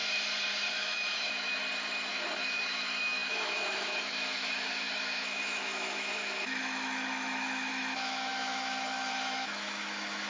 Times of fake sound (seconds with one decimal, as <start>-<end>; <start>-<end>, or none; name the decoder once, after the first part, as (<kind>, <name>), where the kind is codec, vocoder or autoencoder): 0.7-1.6 (autoencoder, DAC-VAE); 2.1-10.3